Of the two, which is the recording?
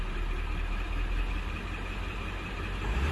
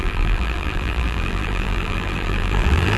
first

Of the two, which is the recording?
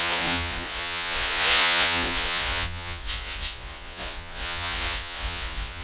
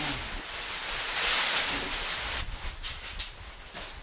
second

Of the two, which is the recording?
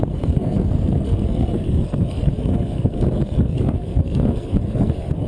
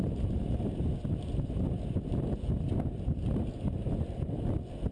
second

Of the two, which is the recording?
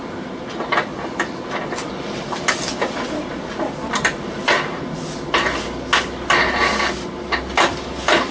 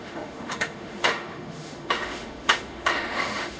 first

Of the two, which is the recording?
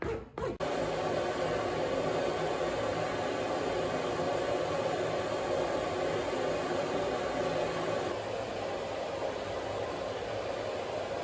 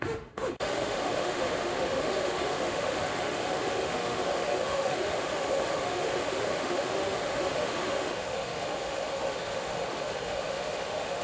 first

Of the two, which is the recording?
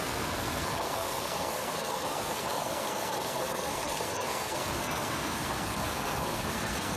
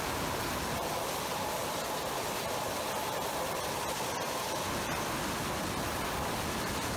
second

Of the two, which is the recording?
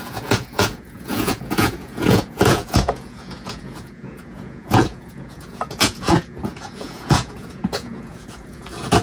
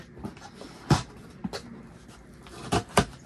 second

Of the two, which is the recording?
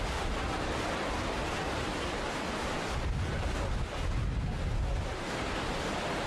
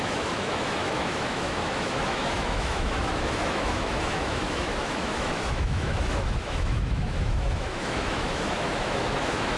first